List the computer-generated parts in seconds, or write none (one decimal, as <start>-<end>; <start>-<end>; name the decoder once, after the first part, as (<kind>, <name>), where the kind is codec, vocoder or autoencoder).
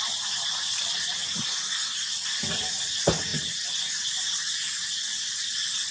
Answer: none